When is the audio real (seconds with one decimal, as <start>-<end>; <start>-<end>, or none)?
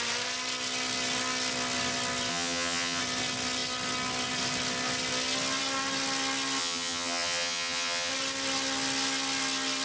0.0-2.3; 3.0-6.6; 8.1-9.8